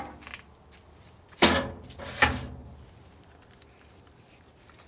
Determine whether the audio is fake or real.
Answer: real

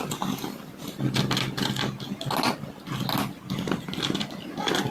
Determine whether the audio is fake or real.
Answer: real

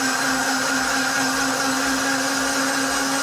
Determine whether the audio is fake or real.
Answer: real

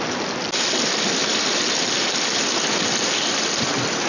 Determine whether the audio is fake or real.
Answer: fake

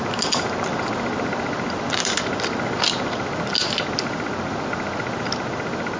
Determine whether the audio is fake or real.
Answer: real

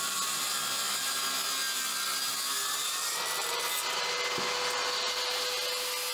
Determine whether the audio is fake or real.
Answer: real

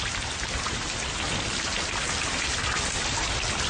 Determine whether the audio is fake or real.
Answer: real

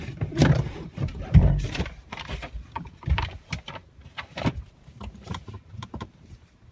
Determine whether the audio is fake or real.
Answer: fake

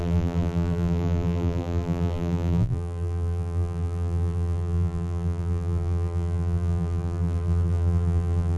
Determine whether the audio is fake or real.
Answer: fake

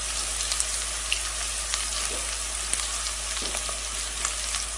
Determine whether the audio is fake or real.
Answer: real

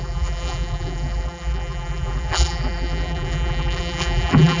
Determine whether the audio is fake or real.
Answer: fake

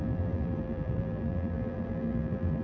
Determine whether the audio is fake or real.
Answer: fake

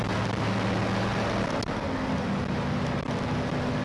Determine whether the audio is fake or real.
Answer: real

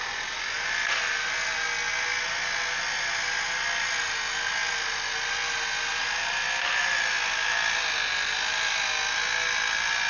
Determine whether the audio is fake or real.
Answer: real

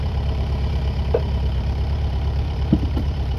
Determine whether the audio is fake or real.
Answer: fake